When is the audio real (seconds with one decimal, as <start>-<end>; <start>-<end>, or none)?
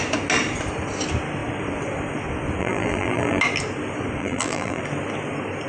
0.0-2.6; 3.4-4.2; 4.8-5.7